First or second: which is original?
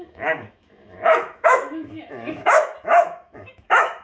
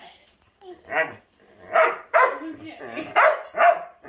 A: second